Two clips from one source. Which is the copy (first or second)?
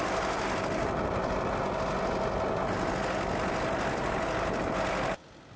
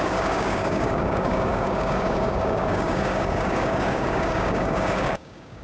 second